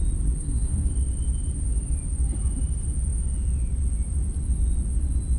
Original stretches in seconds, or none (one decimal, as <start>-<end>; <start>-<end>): 0.0-0.4; 0.9-5.4